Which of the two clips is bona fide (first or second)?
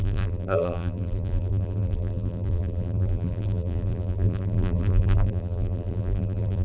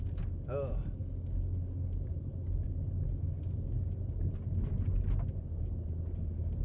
second